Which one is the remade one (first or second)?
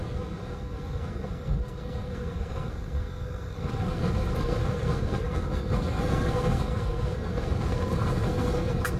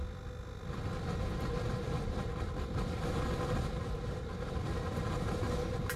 first